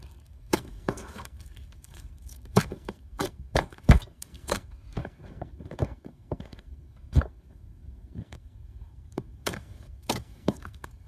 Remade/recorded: remade